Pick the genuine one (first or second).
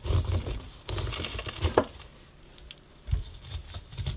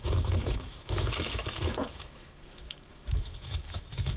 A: first